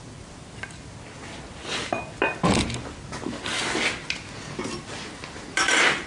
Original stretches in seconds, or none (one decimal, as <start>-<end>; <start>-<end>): 0.0-6.1